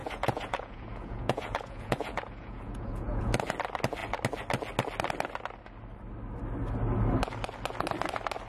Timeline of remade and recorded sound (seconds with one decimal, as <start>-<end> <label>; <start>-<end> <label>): 0.0-3.3 remade; 3.3-8.5 recorded